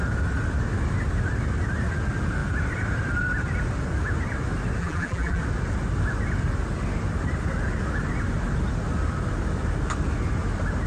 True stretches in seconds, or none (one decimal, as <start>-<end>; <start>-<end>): 0.0-4.8; 5.4-10.9